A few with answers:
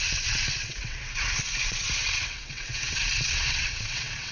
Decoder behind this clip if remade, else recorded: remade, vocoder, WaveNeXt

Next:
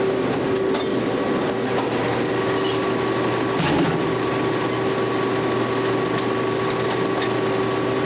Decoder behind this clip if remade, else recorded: recorded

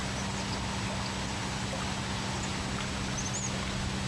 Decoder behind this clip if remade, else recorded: recorded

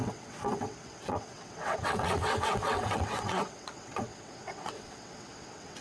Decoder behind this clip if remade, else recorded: remade, vocoder, WaveNeXt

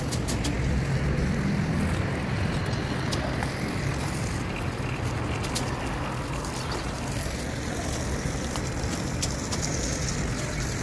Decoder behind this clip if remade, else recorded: recorded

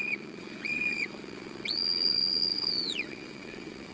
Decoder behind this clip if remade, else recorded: remade, vocoder, WaveNeXt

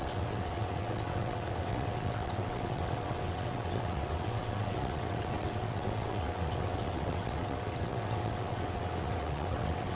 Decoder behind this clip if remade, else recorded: remade, vocoder, WaveNeXt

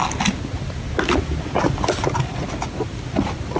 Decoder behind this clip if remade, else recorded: recorded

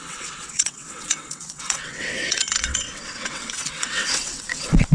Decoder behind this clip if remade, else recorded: remade, vocoder, WaveNeXt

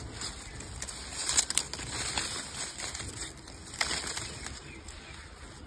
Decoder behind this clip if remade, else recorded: recorded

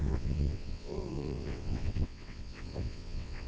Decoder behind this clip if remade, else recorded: remade, vocoder, WaveNeXt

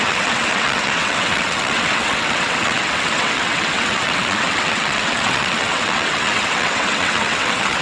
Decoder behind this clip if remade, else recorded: remade, vocoder, WaveNeXt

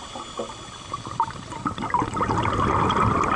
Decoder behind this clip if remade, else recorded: recorded